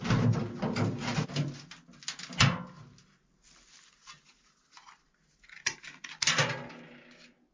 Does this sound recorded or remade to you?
recorded